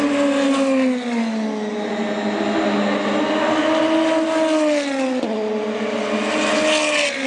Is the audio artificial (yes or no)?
no